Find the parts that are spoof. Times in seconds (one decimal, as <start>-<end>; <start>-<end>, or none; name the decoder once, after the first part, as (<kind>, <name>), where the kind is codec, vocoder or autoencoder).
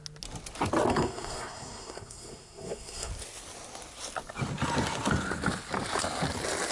0.9-3.1 (codec, SNAC)